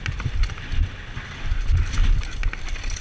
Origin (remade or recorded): recorded